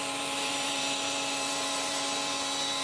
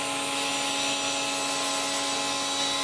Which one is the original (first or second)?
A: second